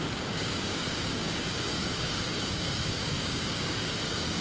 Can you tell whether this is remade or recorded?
remade